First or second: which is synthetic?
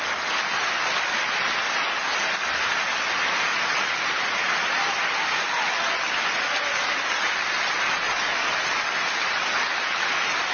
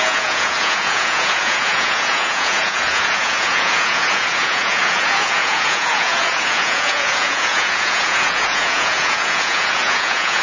second